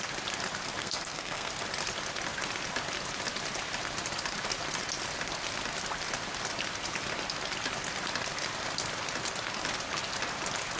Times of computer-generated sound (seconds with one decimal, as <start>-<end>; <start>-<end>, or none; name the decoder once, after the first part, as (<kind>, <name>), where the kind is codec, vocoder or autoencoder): 0.8-1.5 (codec, SNAC)